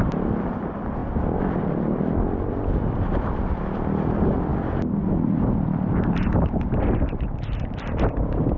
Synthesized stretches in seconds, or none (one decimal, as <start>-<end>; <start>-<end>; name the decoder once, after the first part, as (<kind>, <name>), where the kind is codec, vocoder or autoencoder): 0.0-4.5 (vocoder, BigVGAN v2); 7.7-8.6